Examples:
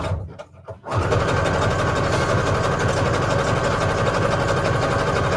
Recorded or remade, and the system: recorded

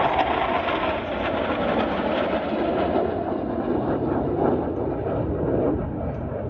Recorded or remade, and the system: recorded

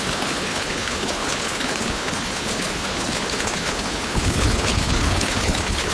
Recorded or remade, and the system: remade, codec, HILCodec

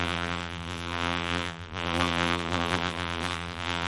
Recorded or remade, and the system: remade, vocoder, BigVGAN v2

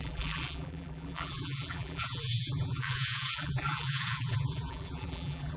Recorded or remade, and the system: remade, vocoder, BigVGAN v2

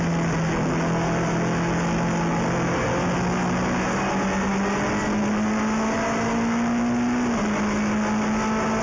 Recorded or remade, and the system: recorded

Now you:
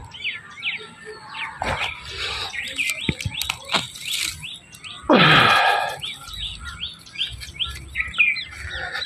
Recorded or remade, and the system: recorded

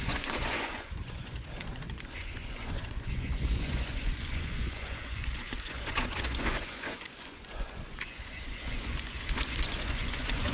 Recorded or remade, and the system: remade, vocoder, Vocos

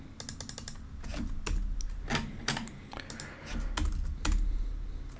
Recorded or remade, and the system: recorded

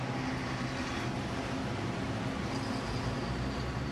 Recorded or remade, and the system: recorded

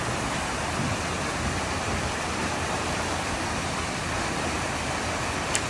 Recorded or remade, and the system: remade, vocoder, BigVGAN v2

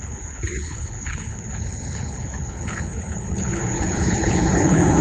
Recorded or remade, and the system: remade, codec, HILCodec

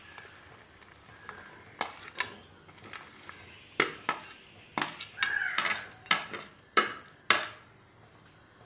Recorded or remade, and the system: recorded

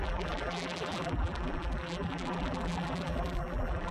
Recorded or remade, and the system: remade, vocoder, BigVGAN v2